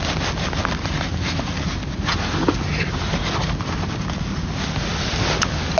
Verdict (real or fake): real